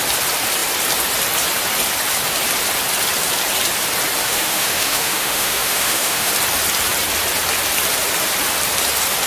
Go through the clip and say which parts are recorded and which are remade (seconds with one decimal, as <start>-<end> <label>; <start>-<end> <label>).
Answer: 0.0-4.2 recorded; 4.2-6.3 remade; 6.3-9.3 recorded